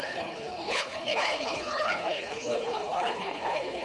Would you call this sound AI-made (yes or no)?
yes